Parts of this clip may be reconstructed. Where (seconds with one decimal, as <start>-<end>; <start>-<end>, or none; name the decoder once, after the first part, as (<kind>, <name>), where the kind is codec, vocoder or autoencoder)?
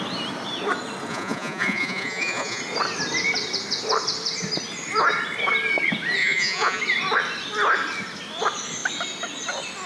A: 1.1-2.6 (vocoder, Vocos); 6.2-6.8